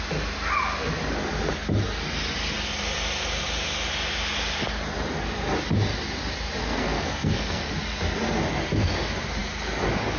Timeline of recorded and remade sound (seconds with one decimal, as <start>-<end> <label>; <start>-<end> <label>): 0.0-6.6 recorded; 6.6-7.7 remade; 7.7-10.2 recorded